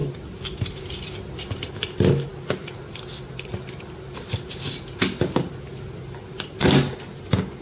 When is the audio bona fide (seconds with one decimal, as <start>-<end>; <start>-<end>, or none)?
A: 0.0-7.6